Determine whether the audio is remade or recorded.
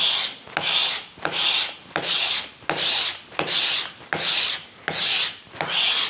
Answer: recorded